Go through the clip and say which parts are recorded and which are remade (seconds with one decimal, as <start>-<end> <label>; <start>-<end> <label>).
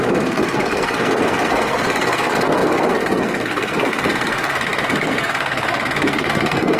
0.0-6.8 remade